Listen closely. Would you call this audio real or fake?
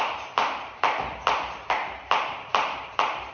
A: real